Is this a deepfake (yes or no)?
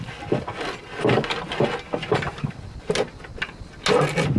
no